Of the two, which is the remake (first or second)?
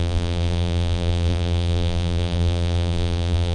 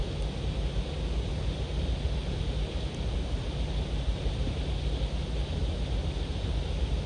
first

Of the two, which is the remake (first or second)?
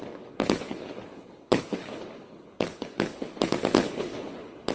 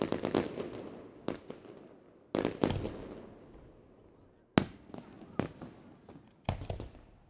first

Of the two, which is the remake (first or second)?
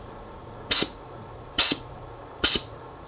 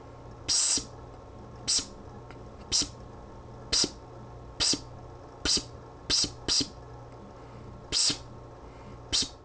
first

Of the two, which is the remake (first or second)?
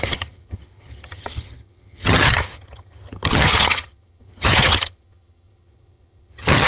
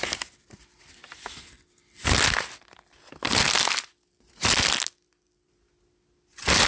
first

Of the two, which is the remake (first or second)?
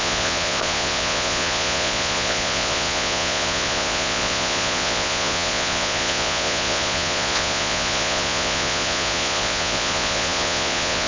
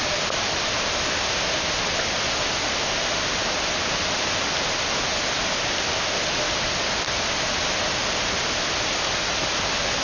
first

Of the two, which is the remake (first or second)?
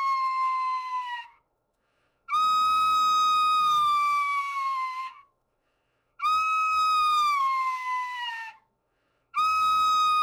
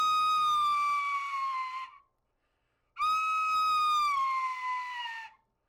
first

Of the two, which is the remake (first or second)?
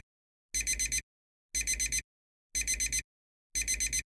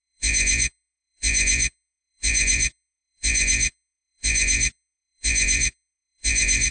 second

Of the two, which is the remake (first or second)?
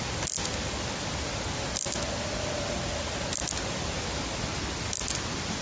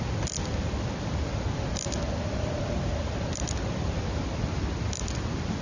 second